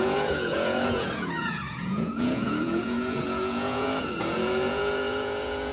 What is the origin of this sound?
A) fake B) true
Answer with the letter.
A